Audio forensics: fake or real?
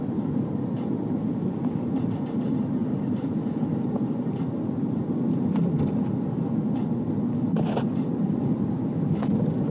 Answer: fake